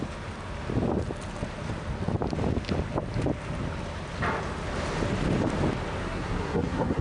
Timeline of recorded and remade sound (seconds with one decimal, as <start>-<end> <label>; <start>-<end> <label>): 0.0-6.0 recorded; 6.0-7.0 remade